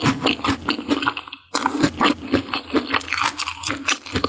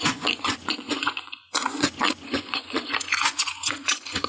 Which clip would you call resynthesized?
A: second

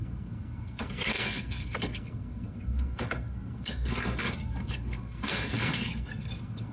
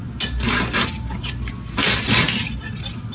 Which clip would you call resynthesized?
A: first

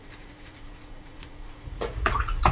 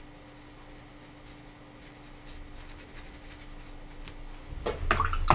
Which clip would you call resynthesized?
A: first